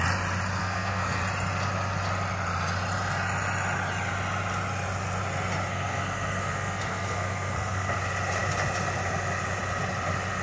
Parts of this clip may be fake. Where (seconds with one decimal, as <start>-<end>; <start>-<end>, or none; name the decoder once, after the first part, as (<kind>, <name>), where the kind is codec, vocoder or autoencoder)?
0.6-1.2 (codec, SNAC); 5.7-8.0